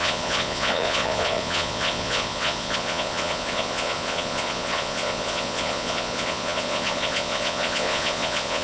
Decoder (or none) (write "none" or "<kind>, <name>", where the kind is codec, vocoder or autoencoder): vocoder, Vocos